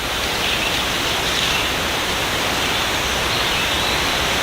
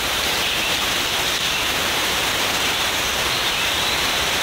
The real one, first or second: first